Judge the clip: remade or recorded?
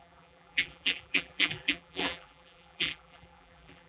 remade